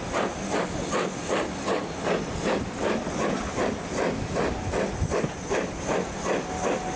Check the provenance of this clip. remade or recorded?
recorded